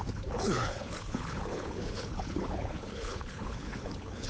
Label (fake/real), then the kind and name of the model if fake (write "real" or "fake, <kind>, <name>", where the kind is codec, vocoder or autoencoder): fake, codec, HILCodec